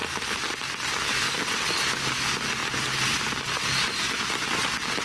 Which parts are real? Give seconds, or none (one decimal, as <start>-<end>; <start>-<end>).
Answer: 0.0-5.0